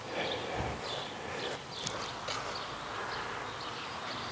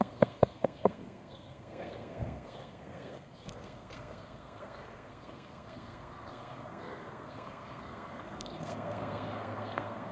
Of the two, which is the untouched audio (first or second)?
first